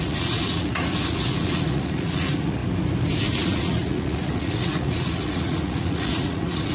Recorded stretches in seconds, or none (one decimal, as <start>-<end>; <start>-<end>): 2.6-3.2